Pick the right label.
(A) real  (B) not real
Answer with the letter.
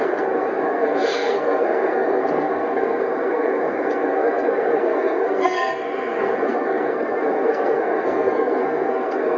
B